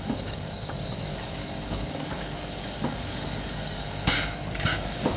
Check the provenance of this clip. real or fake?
fake